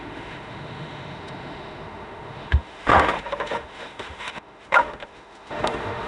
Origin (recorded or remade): remade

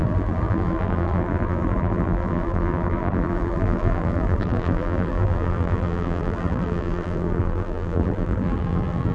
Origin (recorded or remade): remade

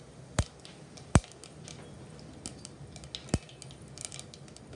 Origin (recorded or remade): recorded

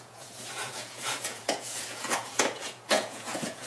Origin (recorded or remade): remade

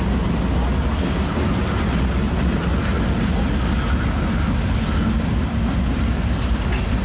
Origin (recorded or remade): recorded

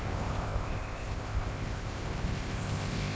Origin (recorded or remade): remade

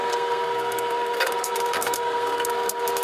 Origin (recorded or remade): remade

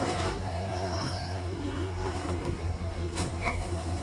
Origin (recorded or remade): remade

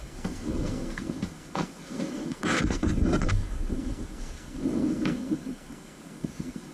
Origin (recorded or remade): remade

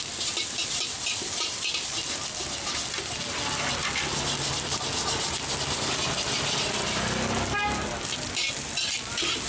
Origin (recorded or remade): recorded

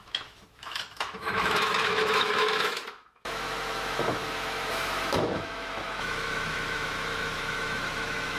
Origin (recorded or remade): remade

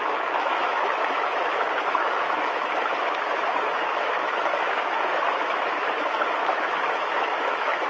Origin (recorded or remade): remade